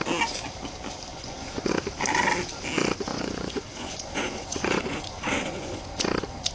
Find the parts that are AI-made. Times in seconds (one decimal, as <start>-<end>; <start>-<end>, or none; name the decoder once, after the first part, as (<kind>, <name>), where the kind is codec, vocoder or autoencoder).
1.1-1.7 (vocoder, Vocos); 3.1-6.0